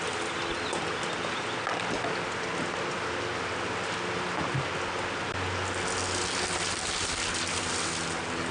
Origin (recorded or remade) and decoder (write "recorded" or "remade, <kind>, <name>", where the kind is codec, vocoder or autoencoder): recorded